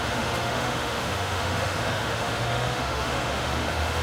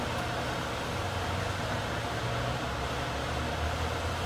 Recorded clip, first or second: second